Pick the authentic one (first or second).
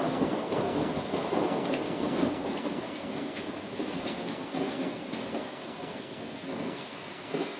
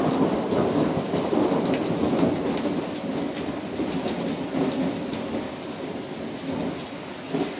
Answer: second